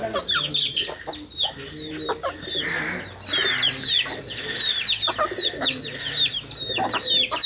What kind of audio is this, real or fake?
real